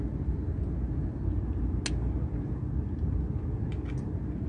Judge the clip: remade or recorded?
recorded